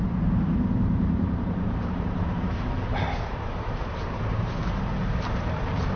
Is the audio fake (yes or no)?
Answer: yes